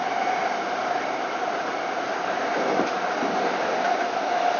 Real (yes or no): yes